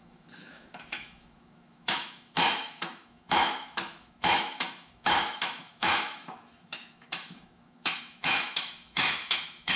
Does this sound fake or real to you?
fake